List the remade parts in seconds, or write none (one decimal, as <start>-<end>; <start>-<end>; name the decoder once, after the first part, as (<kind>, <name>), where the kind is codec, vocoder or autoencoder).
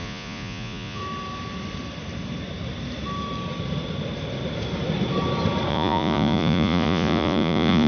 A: 0.0-1.0 (vocoder, Vocos); 5.7-7.9